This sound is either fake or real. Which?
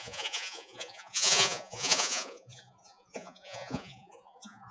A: fake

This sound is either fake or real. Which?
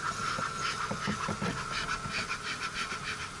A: real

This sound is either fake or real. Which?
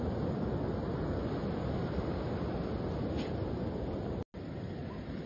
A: real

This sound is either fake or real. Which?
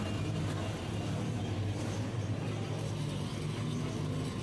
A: real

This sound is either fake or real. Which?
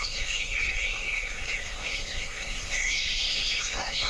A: fake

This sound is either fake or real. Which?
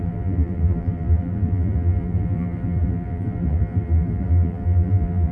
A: fake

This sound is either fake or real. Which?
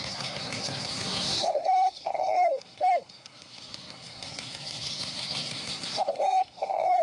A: fake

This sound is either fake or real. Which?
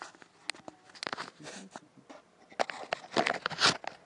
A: real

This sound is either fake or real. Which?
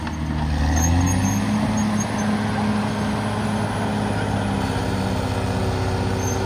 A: real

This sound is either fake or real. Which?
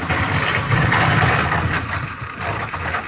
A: real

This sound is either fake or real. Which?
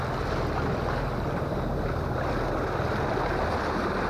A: real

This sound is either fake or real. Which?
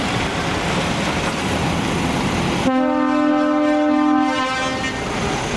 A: real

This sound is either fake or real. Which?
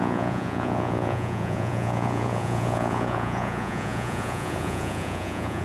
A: fake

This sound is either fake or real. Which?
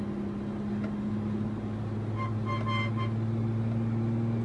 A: real